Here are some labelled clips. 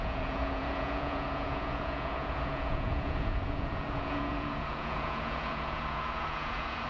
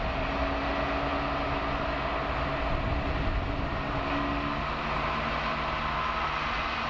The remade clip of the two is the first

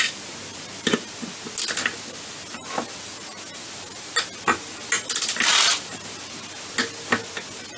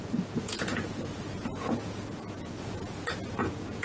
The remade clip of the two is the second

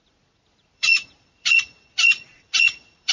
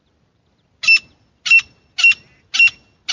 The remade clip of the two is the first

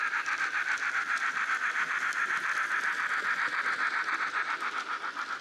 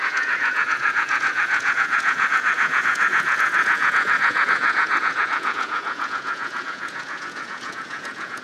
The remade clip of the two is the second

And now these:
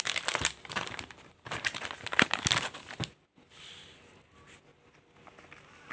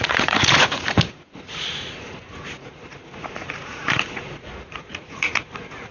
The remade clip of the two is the second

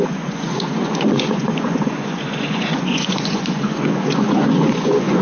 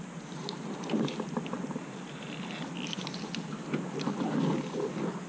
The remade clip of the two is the first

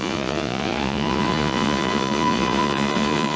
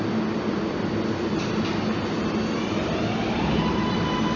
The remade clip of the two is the first